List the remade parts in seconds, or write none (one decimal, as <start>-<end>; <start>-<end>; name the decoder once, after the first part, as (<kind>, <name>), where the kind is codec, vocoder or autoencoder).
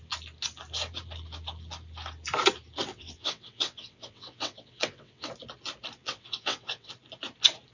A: 2.9-5.3 (vocoder, WaveNeXt); 6.0-6.9